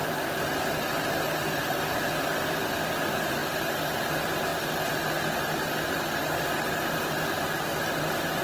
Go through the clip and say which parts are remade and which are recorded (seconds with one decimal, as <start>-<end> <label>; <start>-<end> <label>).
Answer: 0.0-8.4 recorded